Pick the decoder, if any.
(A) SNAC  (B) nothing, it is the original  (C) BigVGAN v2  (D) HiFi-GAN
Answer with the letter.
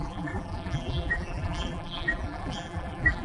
C